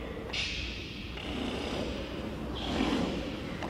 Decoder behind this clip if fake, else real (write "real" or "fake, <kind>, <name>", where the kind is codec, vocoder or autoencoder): real